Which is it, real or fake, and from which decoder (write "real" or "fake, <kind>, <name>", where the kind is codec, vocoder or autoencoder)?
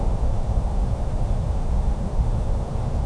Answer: fake, autoencoder, DAC-VAE